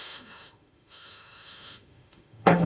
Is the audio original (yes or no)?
no